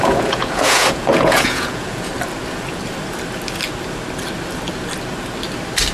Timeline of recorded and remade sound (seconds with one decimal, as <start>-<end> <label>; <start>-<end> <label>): 0.0-2.1 remade; 2.1-5.9 recorded